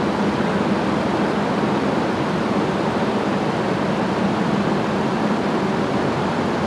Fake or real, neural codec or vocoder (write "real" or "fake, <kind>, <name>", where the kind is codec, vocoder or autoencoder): fake, vocoder, BigVGAN v2